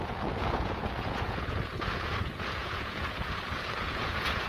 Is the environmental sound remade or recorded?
remade